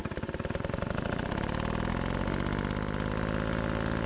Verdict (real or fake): real